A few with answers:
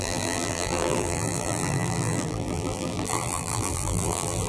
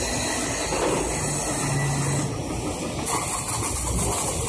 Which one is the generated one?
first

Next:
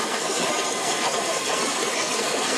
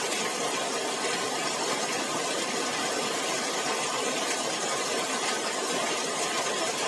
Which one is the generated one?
first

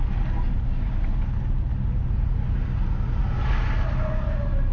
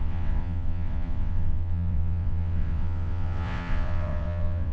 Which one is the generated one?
second